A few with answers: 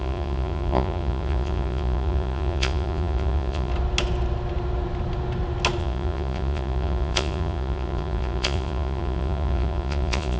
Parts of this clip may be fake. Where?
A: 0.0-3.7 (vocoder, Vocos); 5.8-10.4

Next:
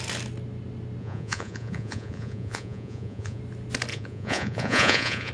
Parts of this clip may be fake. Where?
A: 1.0-3.4 (vocoder, Vocos); 3.9-5.3

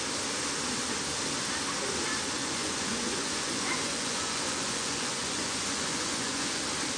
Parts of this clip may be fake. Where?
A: 2.4-6.6 (vocoder, Vocos)

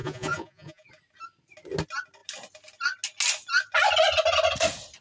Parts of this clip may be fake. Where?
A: 0.0-0.9 (vocoder, Vocos)

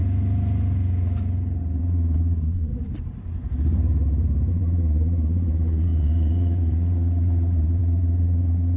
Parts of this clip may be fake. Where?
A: 1.8-2.7 (vocoder, Vocos); 4.5-8.8